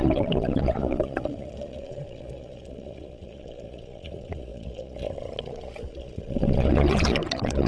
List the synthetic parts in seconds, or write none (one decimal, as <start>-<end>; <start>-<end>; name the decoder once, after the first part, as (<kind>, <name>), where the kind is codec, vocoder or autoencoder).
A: 0.0-7.7 (vocoder, Vocos)